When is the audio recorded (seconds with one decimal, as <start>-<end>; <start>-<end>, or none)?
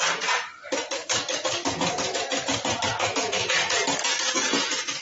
0.0-1.0; 2.2-2.9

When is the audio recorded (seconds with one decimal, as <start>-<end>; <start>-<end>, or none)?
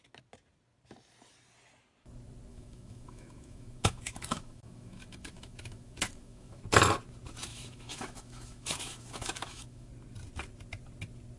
0.0-2.5; 6.6-7.5; 9.9-11.4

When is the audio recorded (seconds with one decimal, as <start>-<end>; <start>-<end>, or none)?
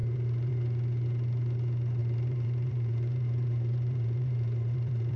0.5-2.0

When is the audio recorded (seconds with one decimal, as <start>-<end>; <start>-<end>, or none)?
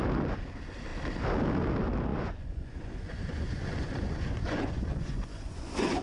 0.0-2.1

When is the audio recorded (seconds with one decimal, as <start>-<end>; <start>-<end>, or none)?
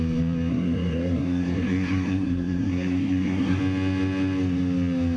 0.0-0.5; 3.6-5.2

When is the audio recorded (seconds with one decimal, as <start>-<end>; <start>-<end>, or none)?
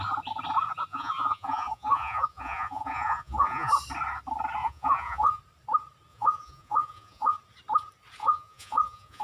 0.0-0.9; 3.7-4.6; 5.4-6.1; 7.4-8.2